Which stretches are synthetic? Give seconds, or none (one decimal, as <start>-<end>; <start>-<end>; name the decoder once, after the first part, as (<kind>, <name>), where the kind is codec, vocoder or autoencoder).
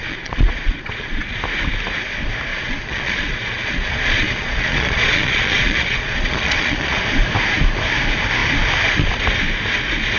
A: 0.0-1.3 (vocoder, Vocos); 2.5-7.0